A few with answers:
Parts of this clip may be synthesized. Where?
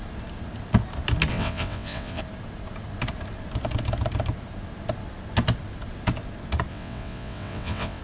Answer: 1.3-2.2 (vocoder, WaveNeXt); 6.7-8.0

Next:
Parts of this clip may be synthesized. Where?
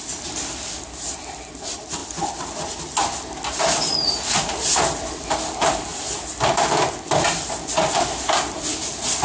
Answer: 0.0-2.0 (vocoder, BigVGAN v2); 5.1-5.9; 7.0-9.2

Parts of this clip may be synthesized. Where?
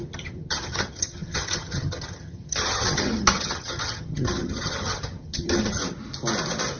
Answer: 0.0-5.8 (vocoder, HiFi-GAN)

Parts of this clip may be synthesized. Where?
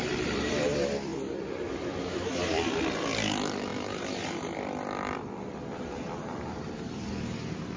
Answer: 0.0-1.1 (vocoder, BigVGAN v2); 1.7-7.8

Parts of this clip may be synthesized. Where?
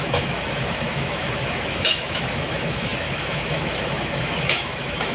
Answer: 0.0-5.1 (autoencoder, DAC-VAE)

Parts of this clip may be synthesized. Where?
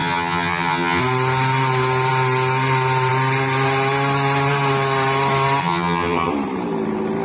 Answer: 0.0-1.0 (vocoder, HiFi-GAN); 5.6-6.3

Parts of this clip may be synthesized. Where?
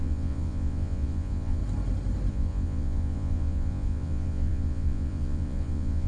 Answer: 0.0-1.6 (vocoder, Vocos); 2.3-6.1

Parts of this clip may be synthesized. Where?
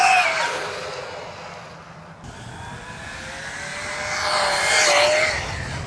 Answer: none